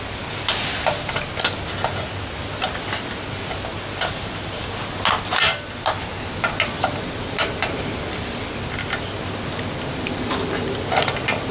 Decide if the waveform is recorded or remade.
recorded